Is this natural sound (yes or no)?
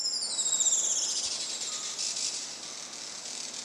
yes